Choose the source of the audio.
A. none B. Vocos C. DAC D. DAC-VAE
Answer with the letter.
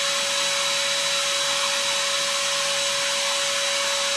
A